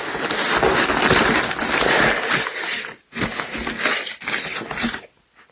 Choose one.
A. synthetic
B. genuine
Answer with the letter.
B